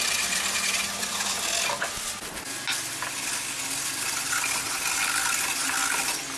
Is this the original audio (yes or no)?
yes